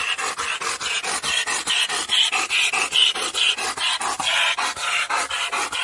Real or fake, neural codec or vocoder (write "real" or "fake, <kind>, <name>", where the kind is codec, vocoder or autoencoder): real